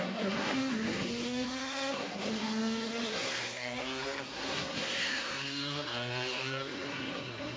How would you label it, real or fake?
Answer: fake